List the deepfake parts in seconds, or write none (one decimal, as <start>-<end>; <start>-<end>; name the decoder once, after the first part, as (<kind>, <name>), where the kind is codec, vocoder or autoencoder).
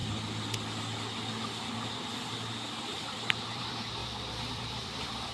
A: 2.8-4.0 (vocoder, BigVGAN v2); 4.5-5.3